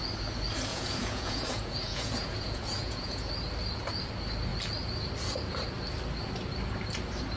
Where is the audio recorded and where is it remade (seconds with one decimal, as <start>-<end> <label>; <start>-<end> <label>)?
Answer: 0.0-0.7 recorded; 0.7-3.3 remade; 3.3-7.4 recorded